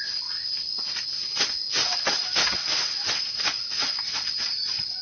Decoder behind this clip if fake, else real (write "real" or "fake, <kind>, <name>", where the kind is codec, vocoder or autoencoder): real